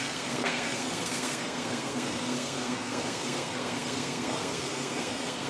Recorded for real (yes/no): no